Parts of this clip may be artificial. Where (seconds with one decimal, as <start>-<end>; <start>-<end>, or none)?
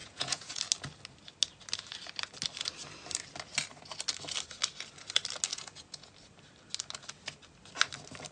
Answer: 0.0-0.6; 5.5-6.1